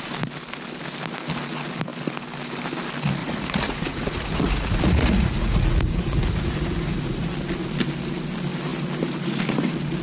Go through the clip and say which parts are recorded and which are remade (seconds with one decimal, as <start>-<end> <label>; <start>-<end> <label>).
0.0-3.2 recorded; 3.2-7.3 remade; 7.3-10.0 recorded